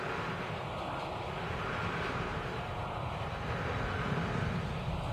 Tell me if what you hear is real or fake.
real